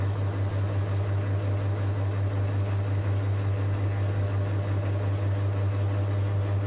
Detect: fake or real real